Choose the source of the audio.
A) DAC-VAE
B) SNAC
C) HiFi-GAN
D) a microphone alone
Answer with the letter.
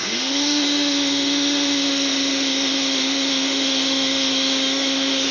A